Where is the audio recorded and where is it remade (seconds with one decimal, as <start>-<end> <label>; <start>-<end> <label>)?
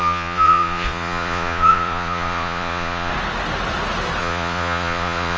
0.0-3.1 remade; 3.1-4.2 recorded; 4.2-5.4 remade